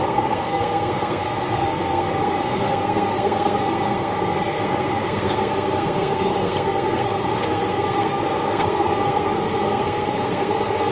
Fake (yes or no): yes